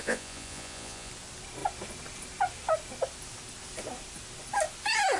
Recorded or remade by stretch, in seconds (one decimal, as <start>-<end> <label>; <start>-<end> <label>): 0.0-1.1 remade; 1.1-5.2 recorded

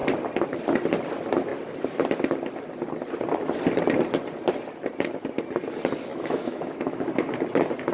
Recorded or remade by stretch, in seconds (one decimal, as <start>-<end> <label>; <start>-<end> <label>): 0.0-6.1 recorded; 6.1-7.1 remade; 7.1-7.9 recorded

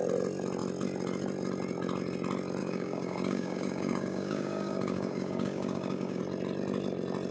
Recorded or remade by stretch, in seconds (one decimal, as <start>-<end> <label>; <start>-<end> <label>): 0.0-2.6 recorded; 2.6-6.2 remade; 6.2-7.3 recorded

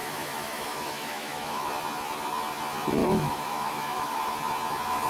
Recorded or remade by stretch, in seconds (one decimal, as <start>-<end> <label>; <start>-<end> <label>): 0.0-1.6 remade; 1.6-3.0 recorded; 3.0-4.2 remade; 4.2-5.1 recorded

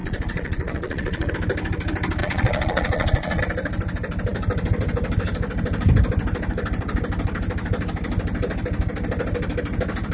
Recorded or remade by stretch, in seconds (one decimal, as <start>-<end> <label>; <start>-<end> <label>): 0.0-1.3 remade; 1.3-2.2 recorded; 2.2-3.4 remade; 3.4-10.1 recorded

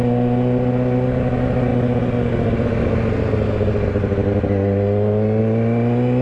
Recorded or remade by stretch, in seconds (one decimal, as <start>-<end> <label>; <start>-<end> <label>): 0.0-6.2 recorded

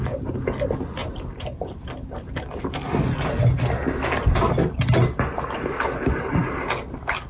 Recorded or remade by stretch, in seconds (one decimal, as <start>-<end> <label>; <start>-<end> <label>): 0.0-1.0 recorded; 1.0-2.4 remade; 2.4-7.3 recorded

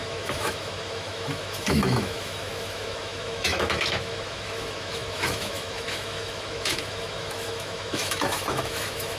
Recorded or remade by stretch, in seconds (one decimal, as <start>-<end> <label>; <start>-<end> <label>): 0.0-9.2 remade